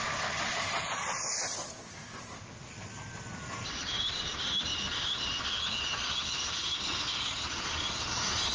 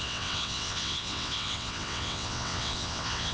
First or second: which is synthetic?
second